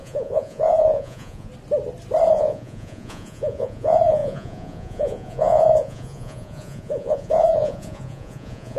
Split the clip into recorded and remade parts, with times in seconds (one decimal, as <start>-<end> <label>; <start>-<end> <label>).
0.0-1.5 remade; 1.5-2.3 recorded; 2.3-8.8 remade

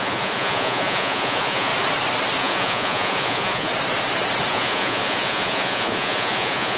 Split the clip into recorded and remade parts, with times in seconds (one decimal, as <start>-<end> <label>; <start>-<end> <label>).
0.0-1.7 remade; 1.7-2.4 recorded; 2.4-3.7 remade; 3.7-4.5 recorded; 4.5-6.8 remade